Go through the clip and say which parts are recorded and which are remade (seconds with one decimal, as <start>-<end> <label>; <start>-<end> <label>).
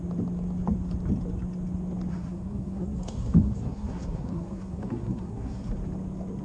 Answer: 0.0-2.1 recorded; 2.1-5.7 remade; 5.7-6.4 recorded